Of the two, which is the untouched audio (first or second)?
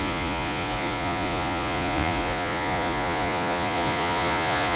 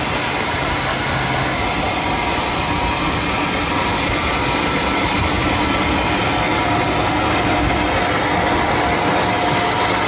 second